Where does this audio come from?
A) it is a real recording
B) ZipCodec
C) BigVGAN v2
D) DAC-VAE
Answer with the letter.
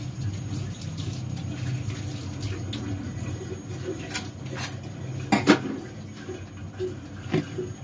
A